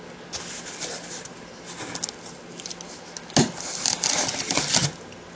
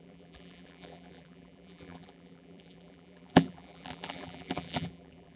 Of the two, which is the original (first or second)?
first